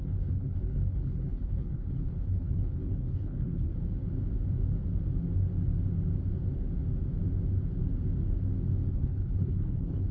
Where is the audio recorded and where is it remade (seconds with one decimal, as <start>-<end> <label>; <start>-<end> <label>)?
0.0-3.7 remade; 3.7-8.9 recorded; 8.9-10.1 remade